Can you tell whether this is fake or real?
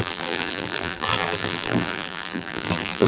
fake